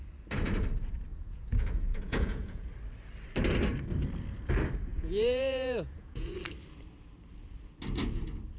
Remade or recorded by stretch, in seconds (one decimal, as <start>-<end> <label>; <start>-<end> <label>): 0.0-1.1 recorded; 1.1-2.7 remade; 2.7-4.9 recorded; 4.9-6.3 remade; 6.3-8.6 recorded